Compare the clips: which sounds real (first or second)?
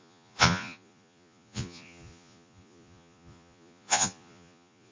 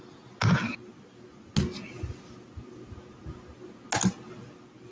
second